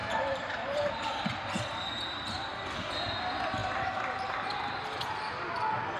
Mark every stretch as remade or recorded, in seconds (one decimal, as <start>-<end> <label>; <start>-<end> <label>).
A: 0.0-0.9 remade; 0.9-6.0 recorded